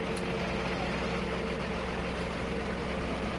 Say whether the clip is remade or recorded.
recorded